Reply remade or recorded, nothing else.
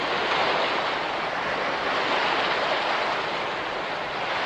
recorded